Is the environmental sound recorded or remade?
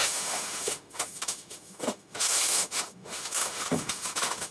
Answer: remade